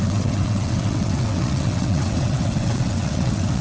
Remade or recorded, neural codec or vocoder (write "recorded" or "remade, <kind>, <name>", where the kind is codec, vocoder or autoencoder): remade, vocoder, WaveNeXt